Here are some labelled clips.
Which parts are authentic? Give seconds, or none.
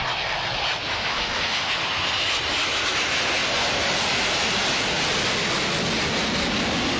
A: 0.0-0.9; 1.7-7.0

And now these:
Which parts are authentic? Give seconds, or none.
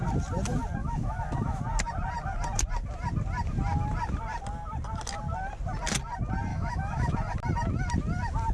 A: 0.0-0.8; 1.6-6.5; 7.1-8.5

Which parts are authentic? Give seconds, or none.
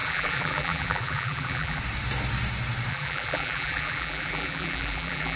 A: 1.8-2.9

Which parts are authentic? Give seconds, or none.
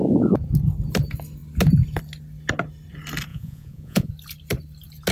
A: 0.0-3.3; 4.1-5.1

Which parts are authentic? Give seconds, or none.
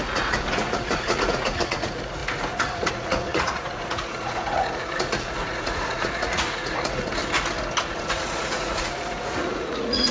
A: 7.2-7.9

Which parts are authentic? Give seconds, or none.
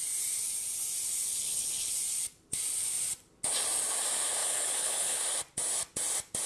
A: 0.0-1.3; 1.9-4.4; 5.2-6.5